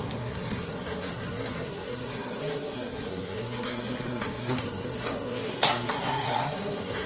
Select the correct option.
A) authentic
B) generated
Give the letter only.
B